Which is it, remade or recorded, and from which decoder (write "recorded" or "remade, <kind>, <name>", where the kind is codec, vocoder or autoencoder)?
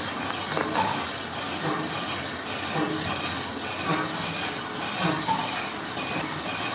recorded